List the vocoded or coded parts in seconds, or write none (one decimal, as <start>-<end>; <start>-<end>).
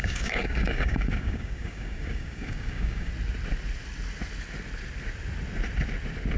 0.0-3.1